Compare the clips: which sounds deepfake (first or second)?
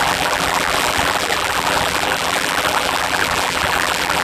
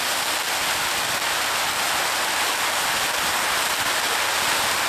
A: first